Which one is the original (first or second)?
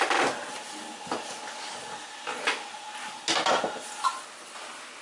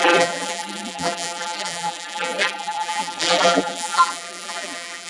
first